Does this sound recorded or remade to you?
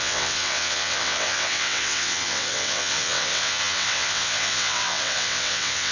remade